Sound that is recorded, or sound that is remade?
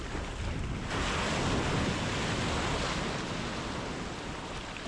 recorded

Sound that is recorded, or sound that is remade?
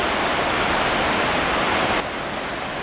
recorded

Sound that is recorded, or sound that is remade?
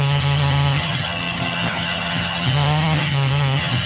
remade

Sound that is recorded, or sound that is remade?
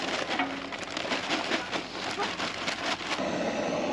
recorded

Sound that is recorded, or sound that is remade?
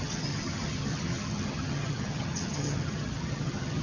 remade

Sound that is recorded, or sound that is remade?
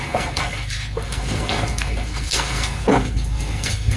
remade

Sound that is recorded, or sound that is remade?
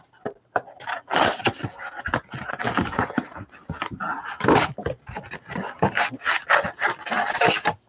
recorded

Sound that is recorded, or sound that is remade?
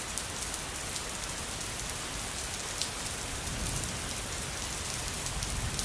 recorded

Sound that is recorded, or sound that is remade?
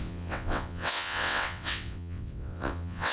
remade